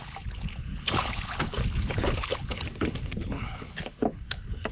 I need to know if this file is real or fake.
fake